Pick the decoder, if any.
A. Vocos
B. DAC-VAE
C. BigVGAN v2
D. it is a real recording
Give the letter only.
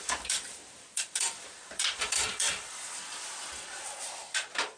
C